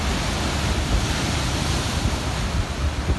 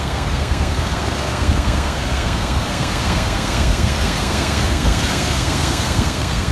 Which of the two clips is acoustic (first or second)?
first